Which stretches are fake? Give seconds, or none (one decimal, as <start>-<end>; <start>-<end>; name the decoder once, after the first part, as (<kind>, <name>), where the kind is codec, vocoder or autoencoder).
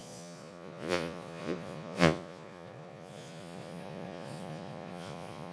0.0-5.5 (vocoder, Vocos)